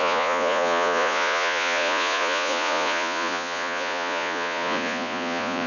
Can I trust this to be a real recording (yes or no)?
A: no